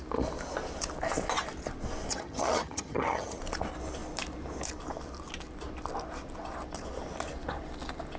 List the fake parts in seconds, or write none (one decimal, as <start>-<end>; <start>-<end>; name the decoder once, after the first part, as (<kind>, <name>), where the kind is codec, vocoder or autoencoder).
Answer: 2.1-3.4 (vocoder, HiFi-GAN)